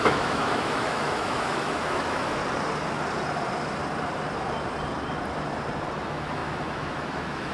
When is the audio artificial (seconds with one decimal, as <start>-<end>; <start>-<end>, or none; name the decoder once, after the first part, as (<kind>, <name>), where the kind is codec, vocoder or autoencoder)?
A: 0.0-2.4 (autoencoder, DAC-VAE); 6.0-7.5